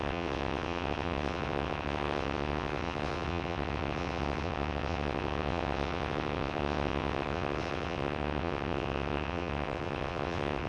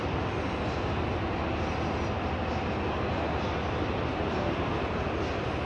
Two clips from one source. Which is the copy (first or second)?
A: first